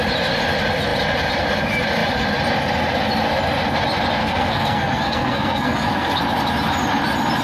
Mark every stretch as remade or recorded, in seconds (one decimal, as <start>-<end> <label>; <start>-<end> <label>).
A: 0.0-4.2 recorded; 4.2-6.2 remade; 6.2-7.4 recorded